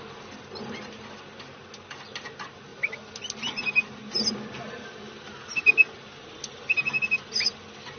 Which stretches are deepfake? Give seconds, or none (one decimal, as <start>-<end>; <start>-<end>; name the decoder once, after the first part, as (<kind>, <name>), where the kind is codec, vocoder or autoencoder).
none